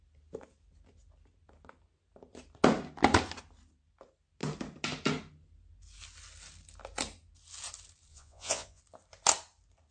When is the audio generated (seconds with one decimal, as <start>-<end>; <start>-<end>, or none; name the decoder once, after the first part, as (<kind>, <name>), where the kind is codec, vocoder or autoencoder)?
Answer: 8.1-8.8 (vocoder, Vocos)